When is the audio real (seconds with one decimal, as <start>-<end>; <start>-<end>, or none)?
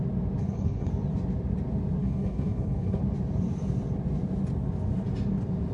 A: 0.0-0.4; 0.9-2.0; 3.0-5.7